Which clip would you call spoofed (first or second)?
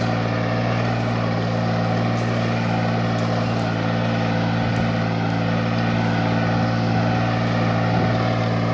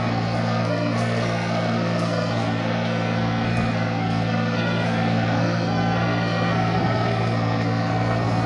second